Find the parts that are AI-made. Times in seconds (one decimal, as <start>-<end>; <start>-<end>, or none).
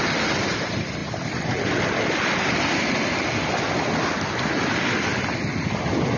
none